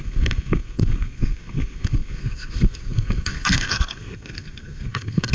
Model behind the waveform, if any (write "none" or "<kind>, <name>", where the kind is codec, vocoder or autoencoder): codec, SNAC